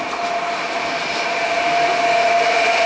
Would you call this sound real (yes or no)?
yes